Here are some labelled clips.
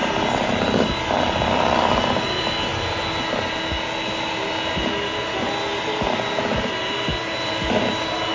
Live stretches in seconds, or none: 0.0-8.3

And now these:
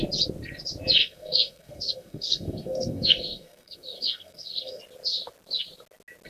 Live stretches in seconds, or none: 0.0-1.0; 4.8-6.3

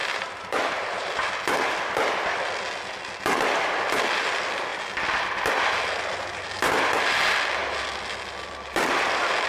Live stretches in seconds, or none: 1.1-9.5